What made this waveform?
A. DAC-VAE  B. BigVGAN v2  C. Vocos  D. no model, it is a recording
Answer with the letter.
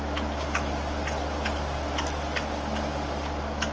D